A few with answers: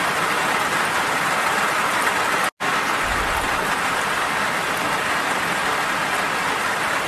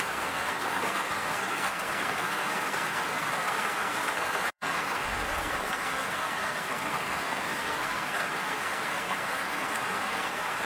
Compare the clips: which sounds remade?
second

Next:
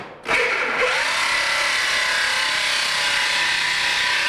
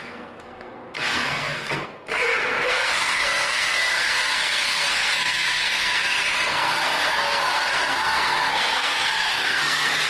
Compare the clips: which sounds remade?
second